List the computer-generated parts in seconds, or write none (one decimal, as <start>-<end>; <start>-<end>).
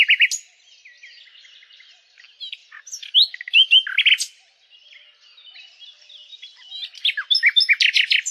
none